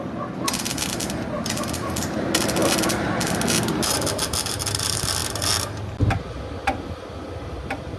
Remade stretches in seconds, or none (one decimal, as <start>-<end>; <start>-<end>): 2.6-3.1